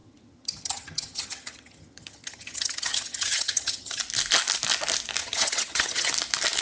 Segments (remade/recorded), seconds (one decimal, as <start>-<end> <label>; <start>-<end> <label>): 0.0-4.0 remade; 4.0-5.2 recorded; 5.2-6.1 remade; 6.1-6.6 recorded